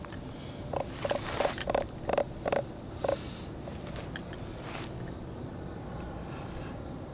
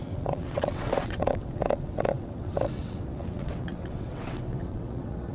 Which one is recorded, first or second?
first